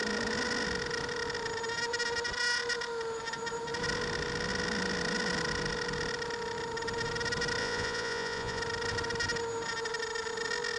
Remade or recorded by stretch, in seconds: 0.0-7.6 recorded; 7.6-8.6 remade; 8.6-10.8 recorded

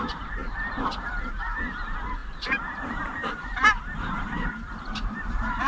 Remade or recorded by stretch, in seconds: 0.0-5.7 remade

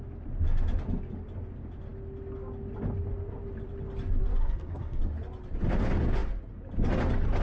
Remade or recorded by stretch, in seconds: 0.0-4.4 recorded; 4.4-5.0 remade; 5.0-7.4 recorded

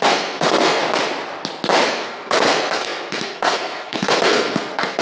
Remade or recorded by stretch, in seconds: 0.0-0.8 remade; 0.8-1.9 recorded; 1.9-5.0 remade

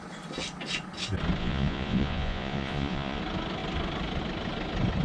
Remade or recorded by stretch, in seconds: 0.0-1.4 recorded; 1.4-3.2 remade; 3.2-5.0 recorded

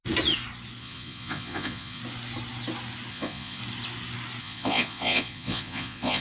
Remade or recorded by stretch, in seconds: 0.0-0.8 recorded; 0.8-2.0 remade; 2.0-3.1 recorded; 3.1-3.6 remade; 3.6-4.4 recorded; 4.4-6.2 remade

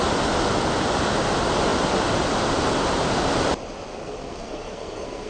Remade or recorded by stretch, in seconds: 0.0-3.9 recorded; 3.9-5.3 remade